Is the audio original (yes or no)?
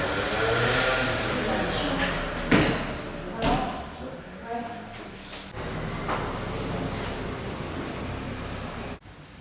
yes